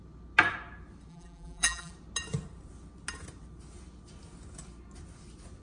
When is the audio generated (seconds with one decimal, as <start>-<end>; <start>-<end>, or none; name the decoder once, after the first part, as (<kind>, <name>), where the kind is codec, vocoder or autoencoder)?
1.1-1.9 (vocoder, BigVGAN v2)